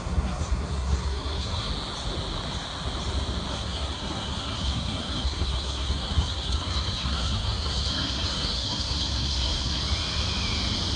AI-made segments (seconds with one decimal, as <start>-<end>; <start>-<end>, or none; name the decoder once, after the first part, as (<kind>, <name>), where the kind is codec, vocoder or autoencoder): 0.0-1.7 (codec, SNAC); 3.5-9.8